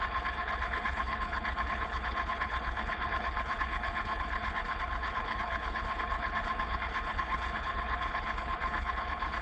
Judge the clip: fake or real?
fake